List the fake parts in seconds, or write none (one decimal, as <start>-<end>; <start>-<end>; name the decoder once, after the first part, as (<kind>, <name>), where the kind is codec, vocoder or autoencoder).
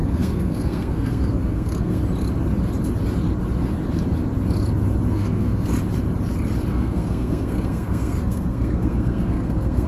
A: 0.0-2.0 (codec, SNAC); 5.1-5.7; 6.7-9.9